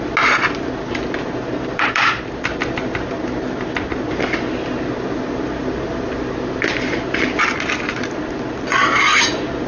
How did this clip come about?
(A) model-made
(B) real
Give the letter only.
B